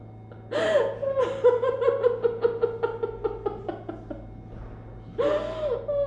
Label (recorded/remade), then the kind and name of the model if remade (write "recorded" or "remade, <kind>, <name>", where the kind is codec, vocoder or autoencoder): recorded